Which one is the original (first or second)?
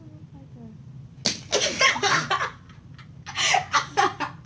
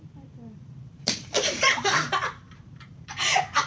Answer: first